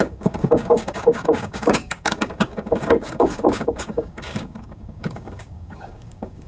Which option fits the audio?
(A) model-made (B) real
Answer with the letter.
A